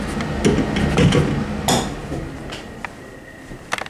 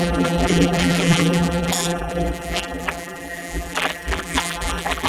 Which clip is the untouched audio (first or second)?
first